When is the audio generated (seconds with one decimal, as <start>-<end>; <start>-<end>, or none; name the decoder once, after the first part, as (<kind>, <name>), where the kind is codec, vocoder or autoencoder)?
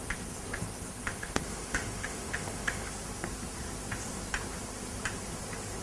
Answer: 1.0-2.9 (autoencoder, DAC-VAE)